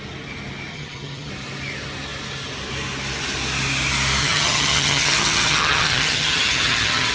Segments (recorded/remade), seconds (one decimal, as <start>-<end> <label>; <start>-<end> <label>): 0.0-0.7 recorded; 0.7-1.3 remade; 1.3-4.2 recorded; 4.2-7.1 remade